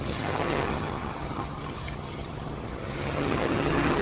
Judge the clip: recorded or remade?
remade